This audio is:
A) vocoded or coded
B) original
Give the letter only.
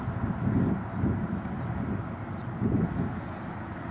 B